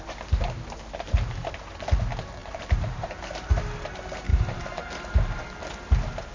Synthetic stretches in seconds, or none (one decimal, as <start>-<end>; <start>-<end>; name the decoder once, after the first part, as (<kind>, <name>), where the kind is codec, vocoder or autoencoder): 2.4-3.1 (vocoder, BigVGAN v2); 4.3-5.4